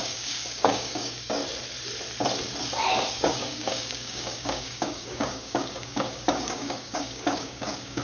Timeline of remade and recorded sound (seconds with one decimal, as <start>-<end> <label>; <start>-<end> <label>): 0.0-1.4 remade; 1.4-3.1 recorded; 3.1-8.0 remade